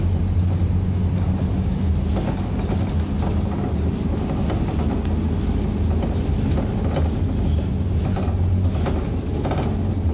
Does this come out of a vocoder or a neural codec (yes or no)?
no